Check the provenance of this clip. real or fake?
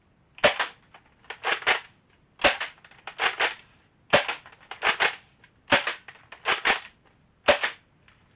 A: real